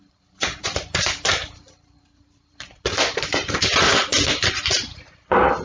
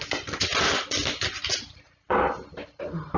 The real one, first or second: second